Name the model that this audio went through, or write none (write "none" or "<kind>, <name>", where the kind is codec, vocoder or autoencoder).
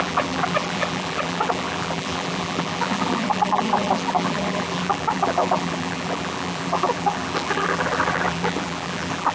vocoder, BigVGAN v2